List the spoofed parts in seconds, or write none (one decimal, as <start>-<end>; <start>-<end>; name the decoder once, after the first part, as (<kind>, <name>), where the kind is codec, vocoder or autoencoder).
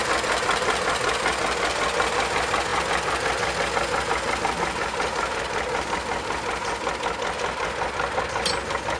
none